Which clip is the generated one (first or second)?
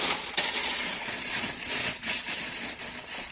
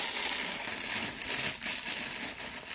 first